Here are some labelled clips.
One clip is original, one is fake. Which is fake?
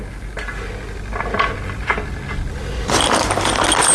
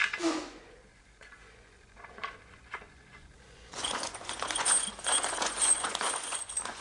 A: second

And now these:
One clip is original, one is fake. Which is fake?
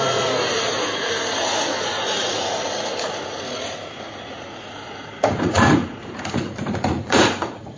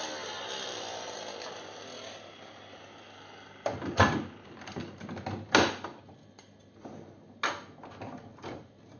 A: first